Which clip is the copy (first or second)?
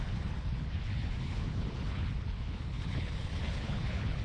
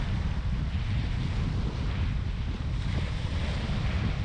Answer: first